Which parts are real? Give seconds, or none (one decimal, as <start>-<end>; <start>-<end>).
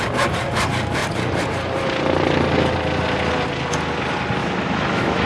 0.0-4.4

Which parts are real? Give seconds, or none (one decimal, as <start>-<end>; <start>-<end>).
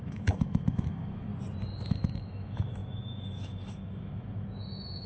1.3-1.9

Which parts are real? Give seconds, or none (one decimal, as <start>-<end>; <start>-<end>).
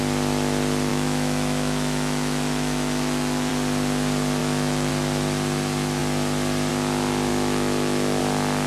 0.0-0.9; 3.5-4.4; 4.9-7.3; 8.2-8.7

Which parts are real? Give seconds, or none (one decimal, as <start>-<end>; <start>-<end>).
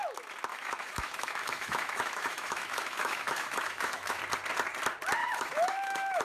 0.0-0.5; 4.2-5.2